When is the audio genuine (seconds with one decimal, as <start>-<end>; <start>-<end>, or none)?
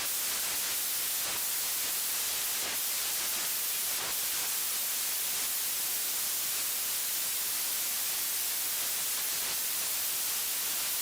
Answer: 0.0-2.8; 4.7-11.0